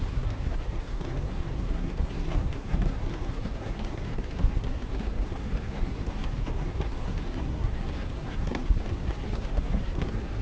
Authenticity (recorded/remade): remade